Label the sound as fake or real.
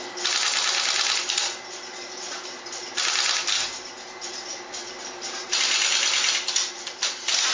real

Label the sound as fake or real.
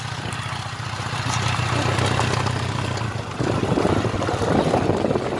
real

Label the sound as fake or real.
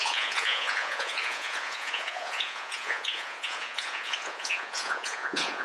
fake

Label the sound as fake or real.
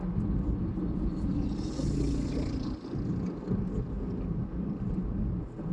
real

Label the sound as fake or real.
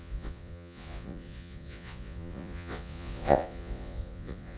fake